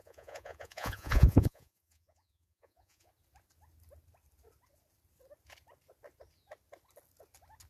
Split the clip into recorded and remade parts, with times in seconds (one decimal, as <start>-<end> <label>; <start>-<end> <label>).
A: 0.0-3.1 remade; 3.1-7.7 recorded